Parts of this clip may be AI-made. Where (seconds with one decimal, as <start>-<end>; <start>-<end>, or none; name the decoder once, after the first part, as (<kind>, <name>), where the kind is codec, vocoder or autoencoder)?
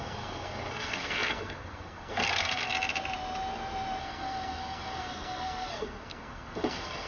0.0-2.7 (codec, SNAC); 4.0-7.1